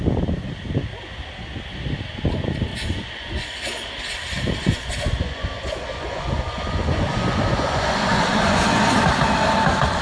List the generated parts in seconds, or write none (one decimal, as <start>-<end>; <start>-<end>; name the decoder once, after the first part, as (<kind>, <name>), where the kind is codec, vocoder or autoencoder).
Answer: 2.7-3.9 (vocoder, Vocos); 4.6-9.0